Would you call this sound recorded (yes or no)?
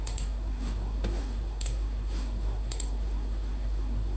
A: no